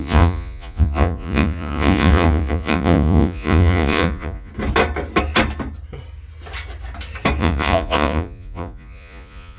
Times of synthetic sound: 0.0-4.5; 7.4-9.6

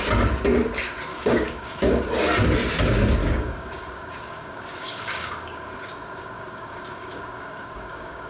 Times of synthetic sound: 1.1-1.9; 3.2-8.3

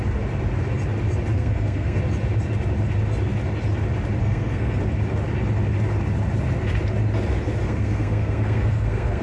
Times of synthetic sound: 1.3-2.0; 4.2-4.8; 7.6-9.2